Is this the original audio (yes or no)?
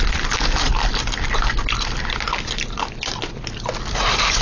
yes